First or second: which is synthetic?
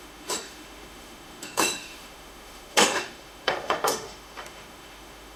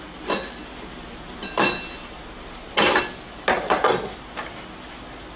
first